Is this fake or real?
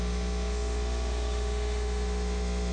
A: fake